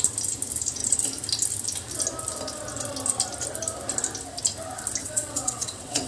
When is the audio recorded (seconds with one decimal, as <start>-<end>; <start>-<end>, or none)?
0.0-5.0